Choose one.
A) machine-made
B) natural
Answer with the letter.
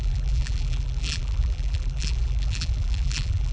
A